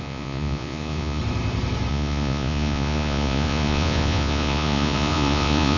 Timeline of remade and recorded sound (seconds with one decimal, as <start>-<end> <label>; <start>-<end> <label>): 0.0-1.2 remade; 1.2-1.9 recorded; 1.9-5.8 remade